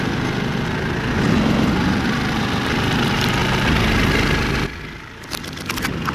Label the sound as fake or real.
real